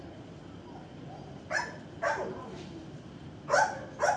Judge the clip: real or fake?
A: real